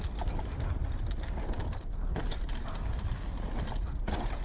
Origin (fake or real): real